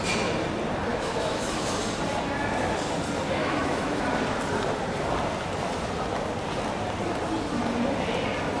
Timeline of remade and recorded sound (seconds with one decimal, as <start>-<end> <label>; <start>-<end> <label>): 0.0-0.9 recorded; 0.9-1.8 remade; 1.8-3.4 recorded; 3.4-4.0 remade; 4.0-8.6 recorded